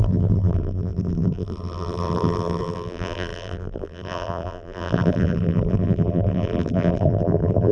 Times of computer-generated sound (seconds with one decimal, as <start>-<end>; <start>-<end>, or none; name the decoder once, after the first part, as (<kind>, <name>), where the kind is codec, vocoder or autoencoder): 0.0-7.7 (vocoder, BigVGAN v2)